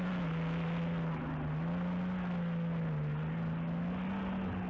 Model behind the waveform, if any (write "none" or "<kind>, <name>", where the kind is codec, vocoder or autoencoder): none